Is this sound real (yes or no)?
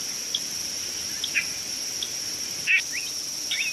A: yes